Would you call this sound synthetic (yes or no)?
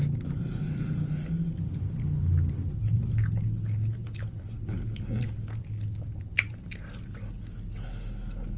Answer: no